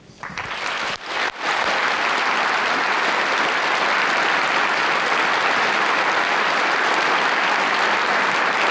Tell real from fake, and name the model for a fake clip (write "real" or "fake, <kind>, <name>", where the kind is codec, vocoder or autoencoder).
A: real